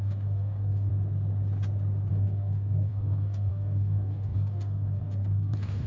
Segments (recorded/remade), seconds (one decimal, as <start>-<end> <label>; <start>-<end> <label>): 0.0-0.9 remade; 0.9-2.1 recorded; 2.1-5.9 remade